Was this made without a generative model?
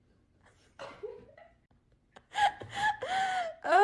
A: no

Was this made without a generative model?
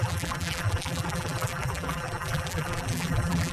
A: no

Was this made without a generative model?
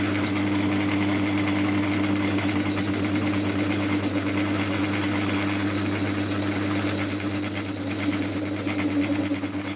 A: yes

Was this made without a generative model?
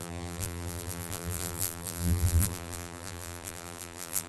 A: no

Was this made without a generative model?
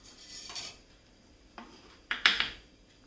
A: no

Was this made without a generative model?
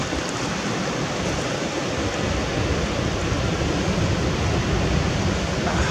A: yes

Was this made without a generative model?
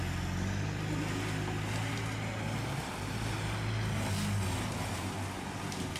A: yes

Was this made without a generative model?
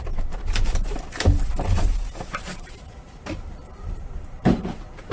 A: no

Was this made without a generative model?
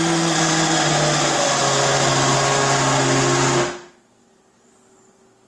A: yes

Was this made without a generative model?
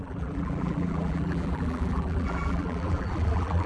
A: no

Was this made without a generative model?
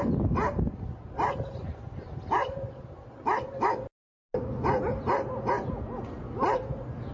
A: yes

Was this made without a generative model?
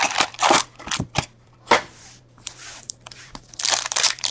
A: no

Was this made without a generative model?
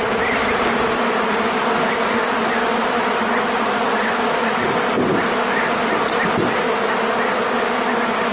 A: yes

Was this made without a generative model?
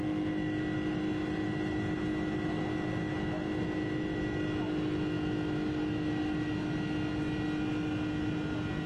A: yes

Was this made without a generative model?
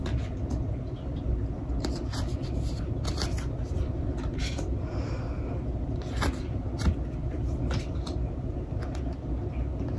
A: yes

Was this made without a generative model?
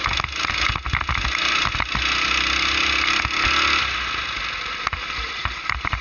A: yes